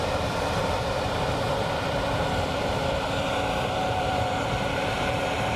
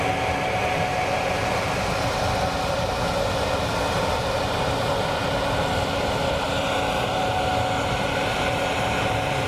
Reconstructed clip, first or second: first